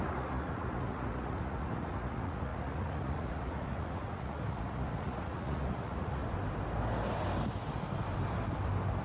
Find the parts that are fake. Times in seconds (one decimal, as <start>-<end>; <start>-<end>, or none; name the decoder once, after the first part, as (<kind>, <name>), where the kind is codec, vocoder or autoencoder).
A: 0.0-6.2 (vocoder, Vocos)